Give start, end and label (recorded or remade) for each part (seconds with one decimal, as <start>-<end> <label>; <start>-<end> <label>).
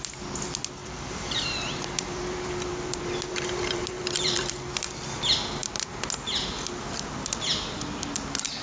0.0-0.8 recorded; 0.8-4.9 remade; 4.9-8.6 recorded